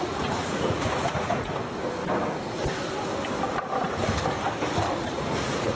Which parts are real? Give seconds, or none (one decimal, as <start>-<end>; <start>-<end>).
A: 1.6-2.2; 2.6-3.5; 4.0-4.8